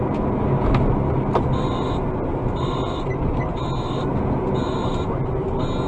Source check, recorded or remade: recorded